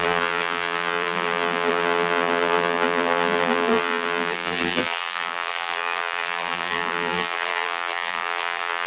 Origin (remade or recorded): remade